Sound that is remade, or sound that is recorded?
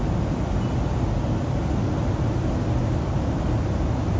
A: recorded